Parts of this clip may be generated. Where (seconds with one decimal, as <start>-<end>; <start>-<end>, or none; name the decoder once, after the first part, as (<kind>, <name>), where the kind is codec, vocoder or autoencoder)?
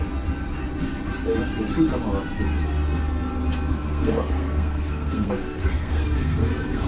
3.7-6.9 (codec, SNAC)